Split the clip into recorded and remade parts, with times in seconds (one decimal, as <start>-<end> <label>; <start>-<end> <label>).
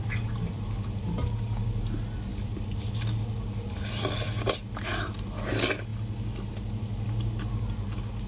0.0-8.3 recorded